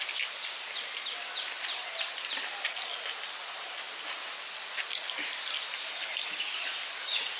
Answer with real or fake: real